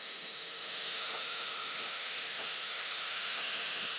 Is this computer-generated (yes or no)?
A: yes